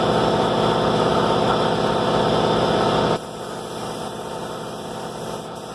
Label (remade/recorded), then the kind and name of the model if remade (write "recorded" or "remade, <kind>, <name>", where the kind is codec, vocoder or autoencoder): recorded